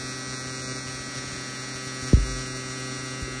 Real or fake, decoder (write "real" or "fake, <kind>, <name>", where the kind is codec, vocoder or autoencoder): real